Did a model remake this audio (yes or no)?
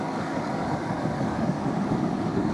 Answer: yes